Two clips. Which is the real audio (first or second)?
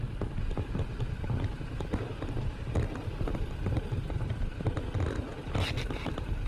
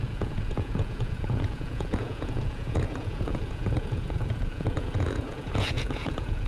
first